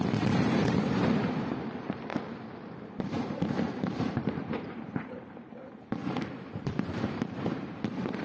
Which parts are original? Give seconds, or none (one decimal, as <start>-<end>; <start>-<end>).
2.1-3.0